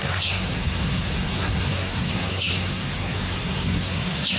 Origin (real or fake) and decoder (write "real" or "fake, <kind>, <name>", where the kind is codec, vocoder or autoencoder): fake, codec, SNAC